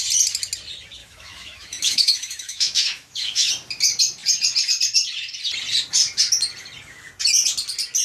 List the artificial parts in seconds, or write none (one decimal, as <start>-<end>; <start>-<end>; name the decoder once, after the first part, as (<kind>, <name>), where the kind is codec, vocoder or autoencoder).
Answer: 1.0-3.5 (autoencoder, DAC-VAE)